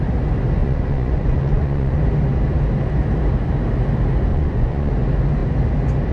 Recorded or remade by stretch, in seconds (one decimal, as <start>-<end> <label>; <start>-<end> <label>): 0.0-0.6 recorded; 0.6-2.0 remade; 2.0-4.3 recorded; 4.3-4.9 remade; 4.9-6.1 recorded